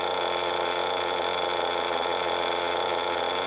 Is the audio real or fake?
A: real